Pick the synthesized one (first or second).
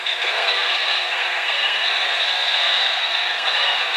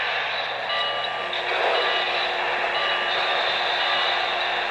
first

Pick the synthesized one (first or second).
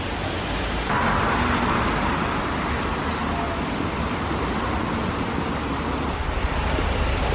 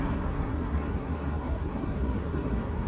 second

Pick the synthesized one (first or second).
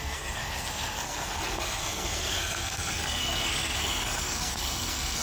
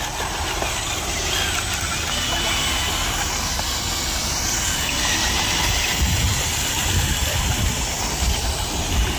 first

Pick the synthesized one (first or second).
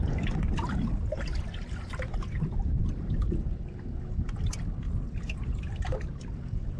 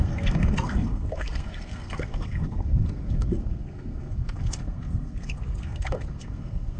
second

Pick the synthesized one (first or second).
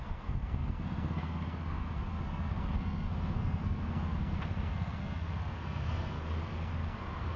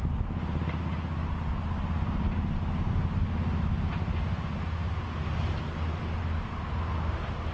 first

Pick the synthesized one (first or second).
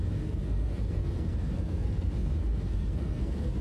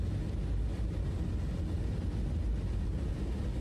first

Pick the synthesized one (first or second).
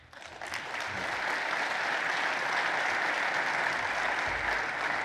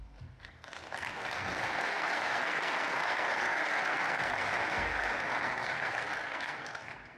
second